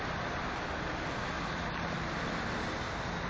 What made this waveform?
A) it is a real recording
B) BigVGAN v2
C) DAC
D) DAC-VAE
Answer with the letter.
A